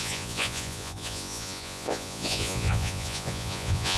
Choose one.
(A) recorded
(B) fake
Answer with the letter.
B